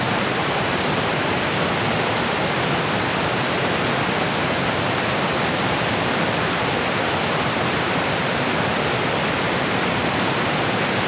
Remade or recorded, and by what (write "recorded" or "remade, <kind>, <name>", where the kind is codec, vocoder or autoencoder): recorded